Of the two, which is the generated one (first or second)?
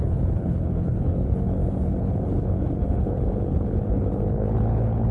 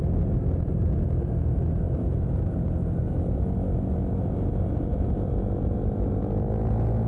first